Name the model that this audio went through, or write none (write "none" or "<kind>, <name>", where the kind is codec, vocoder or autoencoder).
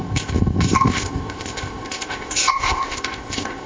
codec, ZipCodec